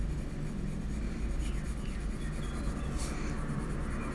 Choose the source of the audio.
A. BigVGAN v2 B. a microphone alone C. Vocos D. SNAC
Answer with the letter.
B